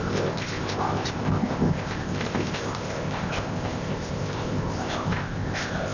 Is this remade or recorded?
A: remade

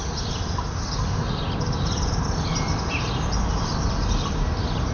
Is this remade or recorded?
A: recorded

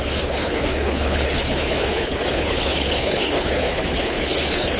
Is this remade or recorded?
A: remade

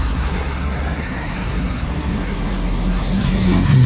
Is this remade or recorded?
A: remade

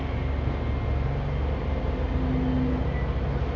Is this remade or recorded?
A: recorded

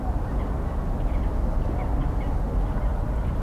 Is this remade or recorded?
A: recorded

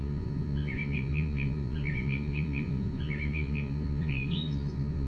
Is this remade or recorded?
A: remade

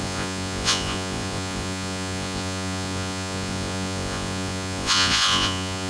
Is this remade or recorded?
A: remade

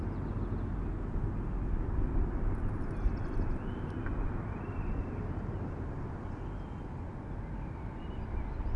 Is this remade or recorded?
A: recorded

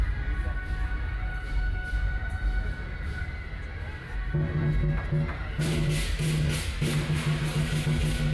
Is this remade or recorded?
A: recorded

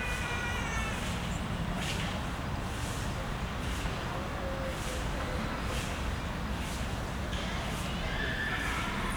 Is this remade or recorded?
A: recorded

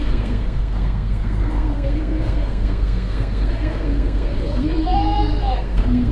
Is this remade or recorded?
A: remade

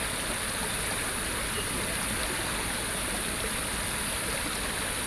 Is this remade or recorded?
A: recorded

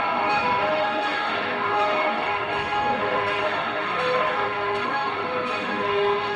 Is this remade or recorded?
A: remade